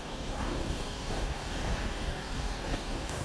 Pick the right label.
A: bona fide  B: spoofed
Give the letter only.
B